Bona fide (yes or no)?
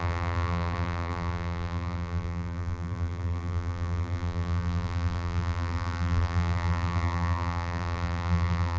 no